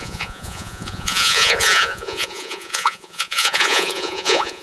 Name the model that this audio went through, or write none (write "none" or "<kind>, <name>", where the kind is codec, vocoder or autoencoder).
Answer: vocoder, Vocos